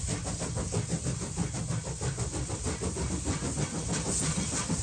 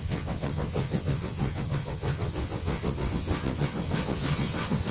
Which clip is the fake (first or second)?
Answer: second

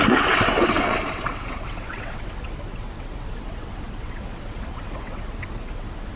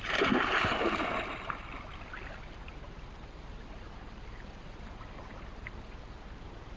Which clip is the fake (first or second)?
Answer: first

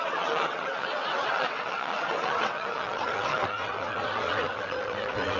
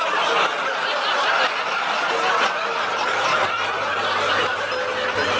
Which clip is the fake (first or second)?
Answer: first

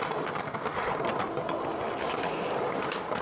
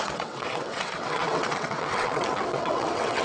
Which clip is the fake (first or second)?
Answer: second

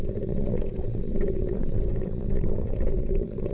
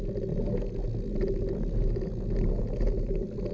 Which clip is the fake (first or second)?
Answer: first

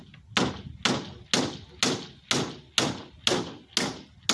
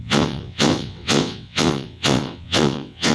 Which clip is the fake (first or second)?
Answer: second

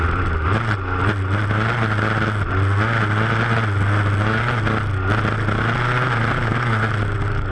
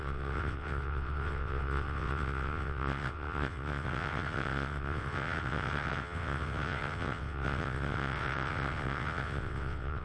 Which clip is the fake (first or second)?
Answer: second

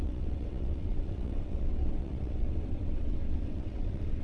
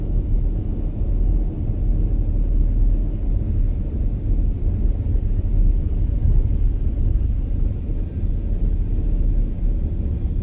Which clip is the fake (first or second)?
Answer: first